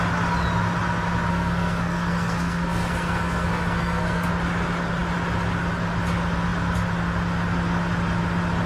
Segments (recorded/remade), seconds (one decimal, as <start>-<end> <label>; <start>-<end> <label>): 0.0-1.3 recorded; 1.3-4.3 remade; 4.3-8.7 recorded